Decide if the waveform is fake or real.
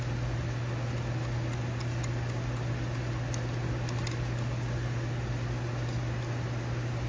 real